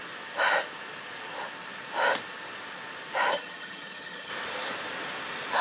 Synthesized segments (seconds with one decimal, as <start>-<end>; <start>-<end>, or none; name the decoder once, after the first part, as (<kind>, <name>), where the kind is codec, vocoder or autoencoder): 3.3-4.3 (vocoder, HiFi-GAN)